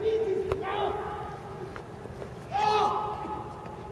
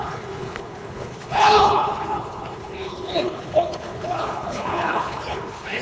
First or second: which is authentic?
first